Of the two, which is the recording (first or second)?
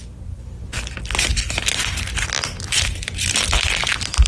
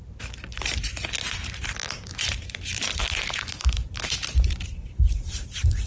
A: first